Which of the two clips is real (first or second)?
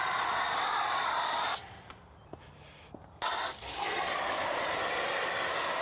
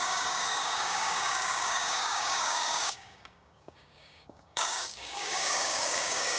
first